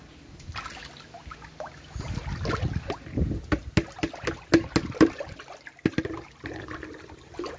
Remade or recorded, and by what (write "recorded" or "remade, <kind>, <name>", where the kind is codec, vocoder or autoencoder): recorded